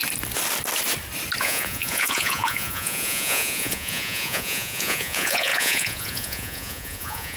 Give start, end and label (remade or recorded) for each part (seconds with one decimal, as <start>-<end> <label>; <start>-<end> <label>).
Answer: 0.0-1.4 recorded; 1.4-7.4 remade